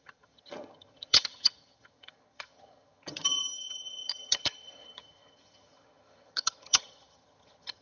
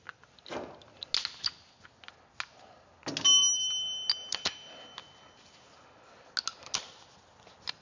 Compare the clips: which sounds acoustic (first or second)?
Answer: second